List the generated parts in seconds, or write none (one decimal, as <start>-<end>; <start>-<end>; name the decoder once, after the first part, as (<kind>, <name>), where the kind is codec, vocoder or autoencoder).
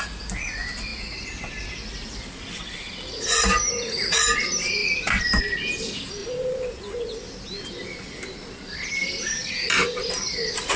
4.8-5.4 (vocoder, BigVGAN v2); 6.2-6.8; 9.0-10.8